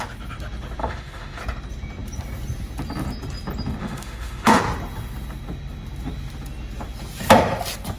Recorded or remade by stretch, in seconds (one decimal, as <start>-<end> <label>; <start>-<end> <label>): 0.0-0.8 recorded; 0.8-1.4 remade; 1.4-3.8 recorded; 3.8-4.6 remade; 4.6-8.0 recorded